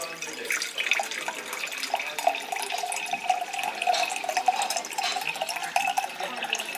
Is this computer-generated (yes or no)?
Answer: no